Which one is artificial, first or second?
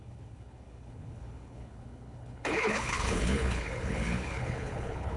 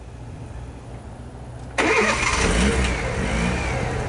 first